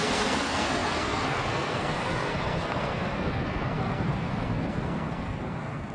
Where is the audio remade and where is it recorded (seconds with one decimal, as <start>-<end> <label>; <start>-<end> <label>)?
0.0-5.9 remade